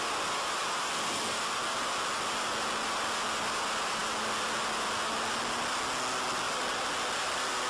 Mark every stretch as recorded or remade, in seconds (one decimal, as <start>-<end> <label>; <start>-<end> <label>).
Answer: 0.0-7.7 recorded